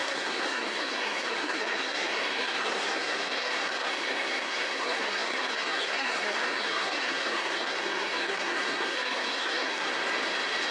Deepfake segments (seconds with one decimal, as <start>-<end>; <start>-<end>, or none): 0.0-10.0